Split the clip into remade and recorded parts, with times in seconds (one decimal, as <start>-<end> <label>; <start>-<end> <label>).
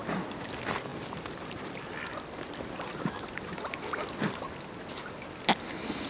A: 0.0-0.9 recorded; 0.9-4.6 remade; 4.6-6.1 recorded